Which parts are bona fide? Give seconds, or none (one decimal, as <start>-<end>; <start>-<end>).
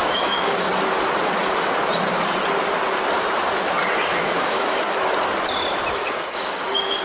0.7-4.1; 4.8-6.0